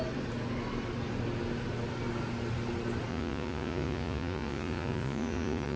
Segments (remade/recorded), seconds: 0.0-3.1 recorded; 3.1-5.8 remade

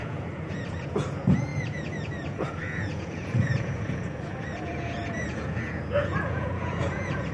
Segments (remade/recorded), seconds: 0.0-7.3 remade

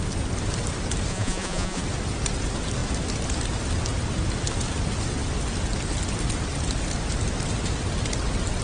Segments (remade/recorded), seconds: 0.0-1.1 recorded; 1.1-1.8 remade; 1.8-8.6 recorded

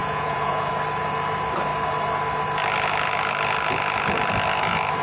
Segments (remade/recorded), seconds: 0.0-0.7 remade; 0.7-5.0 recorded

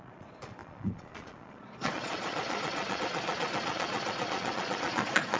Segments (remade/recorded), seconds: 0.0-5.4 remade

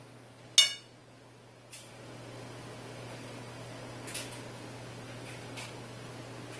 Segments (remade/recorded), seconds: 0.0-6.6 recorded